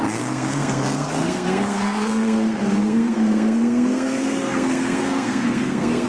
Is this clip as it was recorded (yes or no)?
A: no